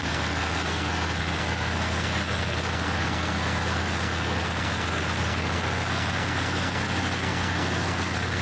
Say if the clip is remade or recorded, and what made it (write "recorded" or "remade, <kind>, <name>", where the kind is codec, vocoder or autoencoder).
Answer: remade, codec, SNAC